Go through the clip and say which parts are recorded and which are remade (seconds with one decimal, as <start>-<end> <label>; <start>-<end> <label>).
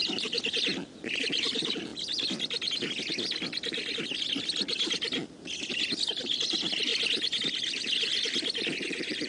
0.0-9.3 recorded